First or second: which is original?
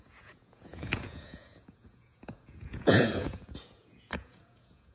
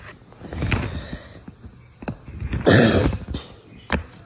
second